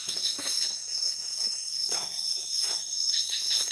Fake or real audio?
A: fake